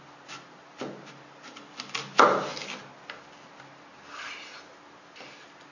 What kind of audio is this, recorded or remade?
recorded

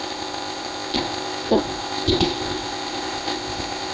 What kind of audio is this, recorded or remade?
remade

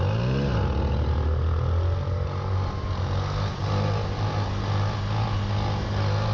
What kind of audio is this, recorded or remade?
recorded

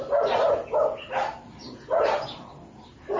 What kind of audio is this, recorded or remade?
recorded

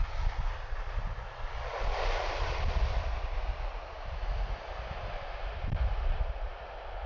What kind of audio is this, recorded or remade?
recorded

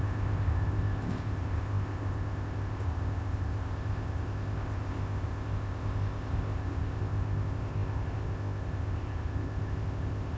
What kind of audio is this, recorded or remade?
remade